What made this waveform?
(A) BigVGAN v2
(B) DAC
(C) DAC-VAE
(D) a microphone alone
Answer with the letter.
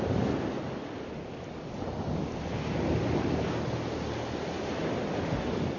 D